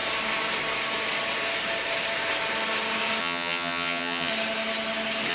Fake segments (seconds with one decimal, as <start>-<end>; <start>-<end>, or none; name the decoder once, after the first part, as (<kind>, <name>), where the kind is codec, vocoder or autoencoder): 3.2-4.3 (vocoder, HiFi-GAN)